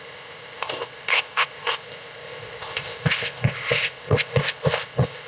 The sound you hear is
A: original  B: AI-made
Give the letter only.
B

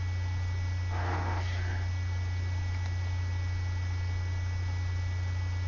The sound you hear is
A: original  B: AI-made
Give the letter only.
A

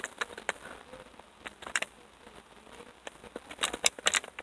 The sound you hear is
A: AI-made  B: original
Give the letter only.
B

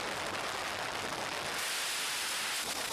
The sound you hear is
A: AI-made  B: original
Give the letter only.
B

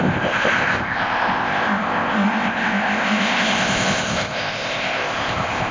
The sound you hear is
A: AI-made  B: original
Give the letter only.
A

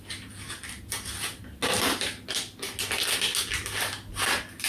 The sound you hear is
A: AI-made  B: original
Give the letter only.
B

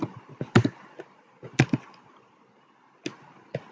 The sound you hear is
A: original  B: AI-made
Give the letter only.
A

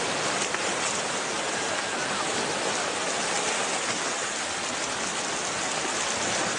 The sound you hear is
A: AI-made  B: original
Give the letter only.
B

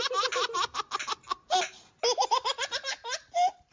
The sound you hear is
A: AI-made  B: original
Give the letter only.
B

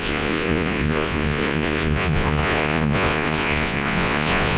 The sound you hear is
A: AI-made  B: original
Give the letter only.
A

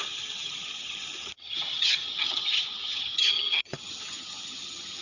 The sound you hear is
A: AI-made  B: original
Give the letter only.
A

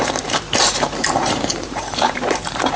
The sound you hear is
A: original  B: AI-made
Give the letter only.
B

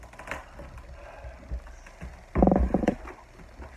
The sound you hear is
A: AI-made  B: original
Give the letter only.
B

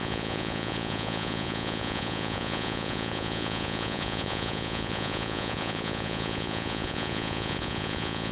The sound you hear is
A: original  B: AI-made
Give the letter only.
B